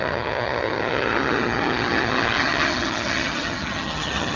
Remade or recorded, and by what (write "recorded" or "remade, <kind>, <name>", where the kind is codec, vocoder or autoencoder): remade, vocoder, HiFi-GAN